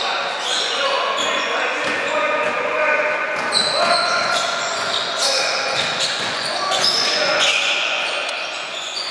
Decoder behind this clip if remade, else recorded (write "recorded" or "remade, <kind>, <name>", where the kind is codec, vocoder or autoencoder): remade, vocoder, Vocos